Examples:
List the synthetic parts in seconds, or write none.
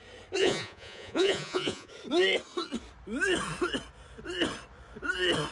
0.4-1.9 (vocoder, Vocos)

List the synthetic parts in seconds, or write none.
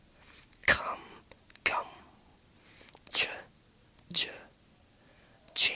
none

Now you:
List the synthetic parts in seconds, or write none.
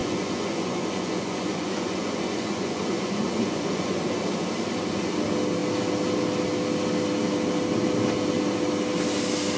0.0-4.0 (vocoder, Vocos)